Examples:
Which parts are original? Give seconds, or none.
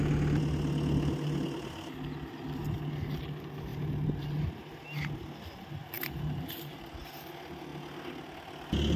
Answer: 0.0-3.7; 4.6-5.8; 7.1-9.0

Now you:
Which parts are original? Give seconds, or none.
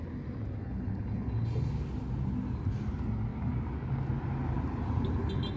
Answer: 0.0-0.6; 1.7-5.6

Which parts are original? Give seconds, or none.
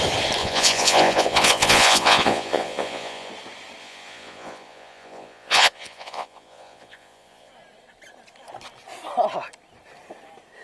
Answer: 0.0-0.4; 3.3-3.8; 7.5-10.6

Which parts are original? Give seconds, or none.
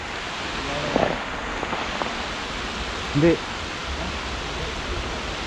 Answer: 0.0-5.5